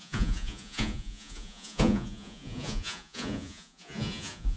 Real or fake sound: fake